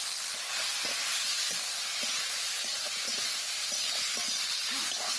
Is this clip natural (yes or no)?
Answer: yes